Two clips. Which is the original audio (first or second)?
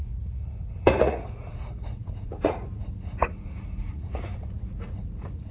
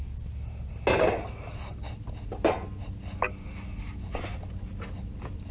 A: second